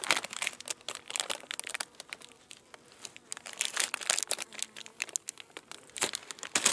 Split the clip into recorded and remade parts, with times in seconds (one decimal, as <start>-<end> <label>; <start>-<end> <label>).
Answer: 0.0-6.7 recorded